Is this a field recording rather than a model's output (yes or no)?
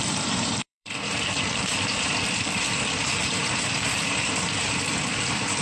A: no